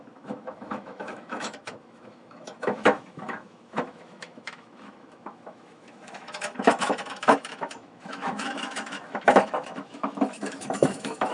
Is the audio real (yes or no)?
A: no